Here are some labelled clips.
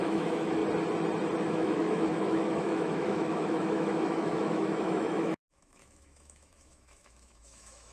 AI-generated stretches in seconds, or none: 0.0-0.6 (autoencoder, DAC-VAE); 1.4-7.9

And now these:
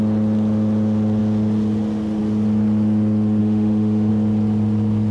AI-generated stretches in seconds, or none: 3.4-4.1 (autoencoder, DAC-VAE)

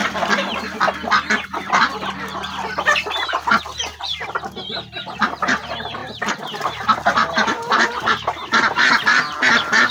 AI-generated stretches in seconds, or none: none

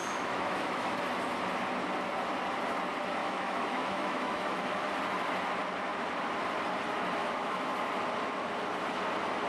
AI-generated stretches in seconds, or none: 0.0-0.9 (autoencoder, DAC-VAE); 3.2-4.9; 7.2-7.7

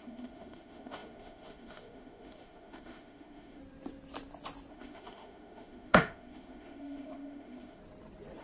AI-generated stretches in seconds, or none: 0.0-3.6 (autoencoder, DAC-VAE); 4.7-7.8

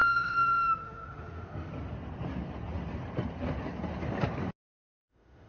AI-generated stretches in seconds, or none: 0.0-1.7 (autoencoder, DAC-VAE); 5.0-5.5